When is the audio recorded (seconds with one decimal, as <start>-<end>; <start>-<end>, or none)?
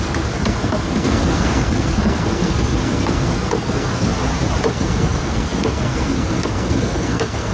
4.1-4.7